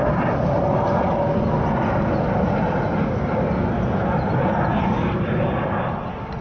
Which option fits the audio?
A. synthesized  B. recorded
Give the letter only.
B